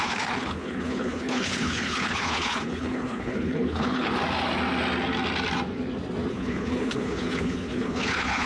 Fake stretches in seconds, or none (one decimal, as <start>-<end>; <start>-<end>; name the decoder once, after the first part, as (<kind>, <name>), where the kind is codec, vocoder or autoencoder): 0.0-4.1 (codec, HILCodec); 6.3-8.5